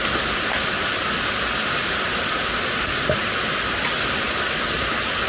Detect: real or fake real